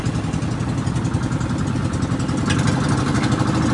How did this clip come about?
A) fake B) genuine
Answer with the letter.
B